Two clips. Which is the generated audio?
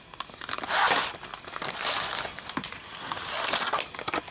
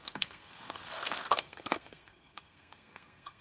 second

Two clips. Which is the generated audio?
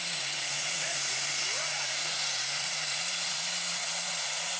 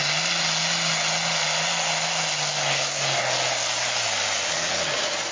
first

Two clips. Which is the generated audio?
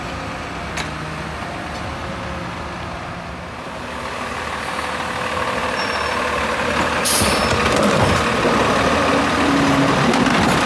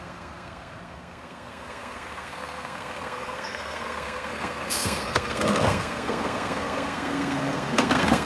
second